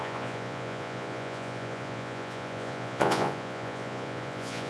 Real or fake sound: fake